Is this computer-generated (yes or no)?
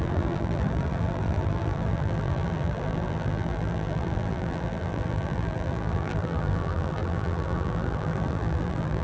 yes